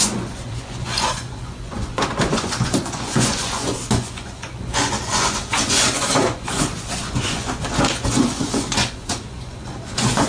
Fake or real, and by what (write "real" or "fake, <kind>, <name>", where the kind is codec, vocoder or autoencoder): fake, vocoder, Vocos